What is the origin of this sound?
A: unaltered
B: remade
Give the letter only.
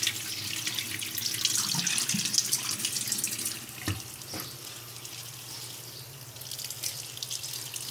A